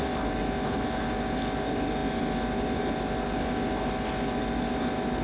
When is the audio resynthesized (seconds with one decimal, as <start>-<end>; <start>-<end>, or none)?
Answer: none